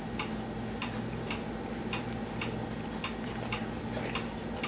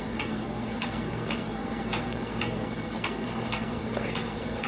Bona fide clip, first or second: first